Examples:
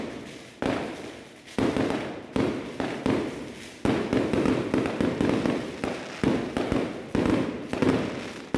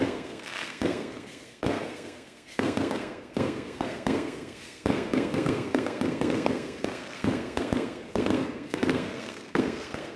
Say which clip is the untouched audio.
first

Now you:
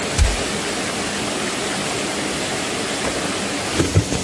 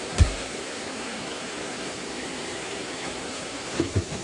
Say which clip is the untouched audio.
first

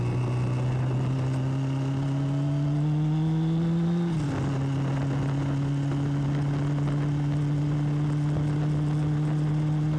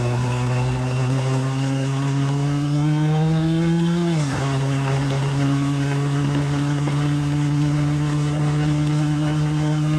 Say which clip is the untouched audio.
first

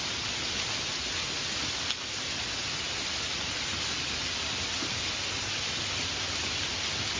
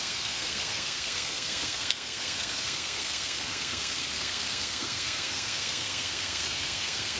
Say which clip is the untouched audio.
first